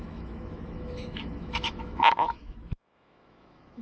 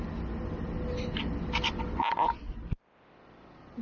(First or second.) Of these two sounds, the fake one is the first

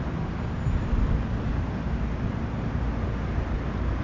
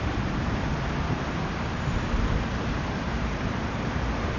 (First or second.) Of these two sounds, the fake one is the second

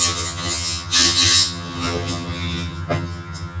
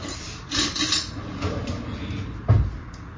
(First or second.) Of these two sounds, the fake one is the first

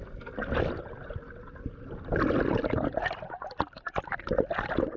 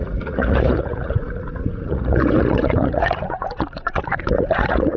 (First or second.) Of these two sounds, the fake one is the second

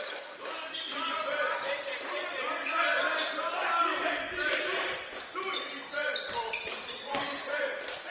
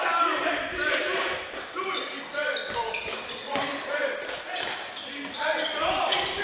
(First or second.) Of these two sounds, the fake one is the second